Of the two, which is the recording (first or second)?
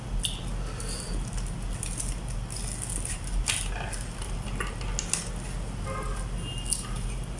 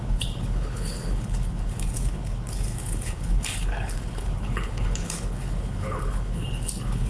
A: first